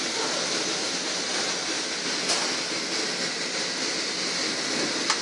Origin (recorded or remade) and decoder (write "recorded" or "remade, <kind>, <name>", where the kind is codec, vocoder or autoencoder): recorded